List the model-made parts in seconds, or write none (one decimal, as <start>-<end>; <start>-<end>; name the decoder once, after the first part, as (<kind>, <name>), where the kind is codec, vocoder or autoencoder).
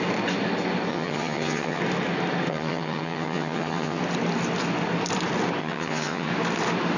0.9-1.8 (vocoder, HiFi-GAN); 2.5-4.0; 5.6-6.3